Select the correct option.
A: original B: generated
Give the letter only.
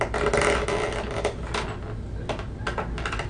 A